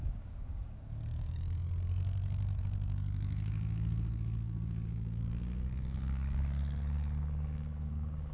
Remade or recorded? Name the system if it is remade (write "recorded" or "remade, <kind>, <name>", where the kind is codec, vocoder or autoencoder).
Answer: remade, codec, DAC